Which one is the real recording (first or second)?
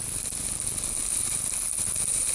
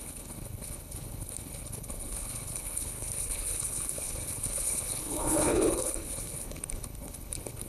first